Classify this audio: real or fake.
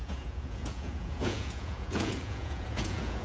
fake